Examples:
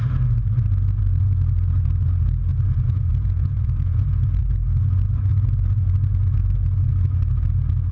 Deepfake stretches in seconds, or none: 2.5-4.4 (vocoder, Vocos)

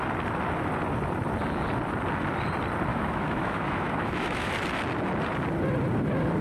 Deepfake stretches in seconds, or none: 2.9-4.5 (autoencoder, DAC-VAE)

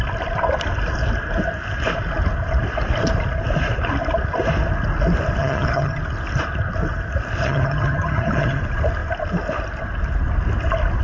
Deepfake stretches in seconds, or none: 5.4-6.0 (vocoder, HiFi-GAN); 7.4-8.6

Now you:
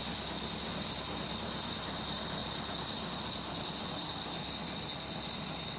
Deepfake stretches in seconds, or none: none

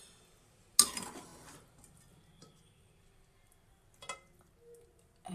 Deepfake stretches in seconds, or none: none

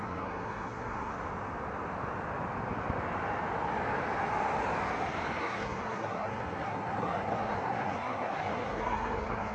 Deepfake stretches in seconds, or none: 0.0-1.1 (codec, SNAC); 5.4-9.5